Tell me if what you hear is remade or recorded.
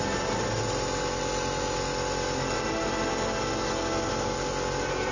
recorded